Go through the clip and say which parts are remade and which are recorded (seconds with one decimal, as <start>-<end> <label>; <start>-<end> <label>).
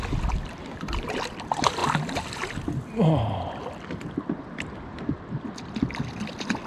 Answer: 0.0-6.7 recorded